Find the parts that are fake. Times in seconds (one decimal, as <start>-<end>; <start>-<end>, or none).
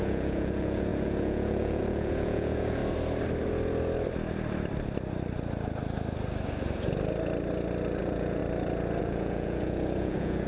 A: 0.0-2.8; 8.0-8.4; 9.0-10.5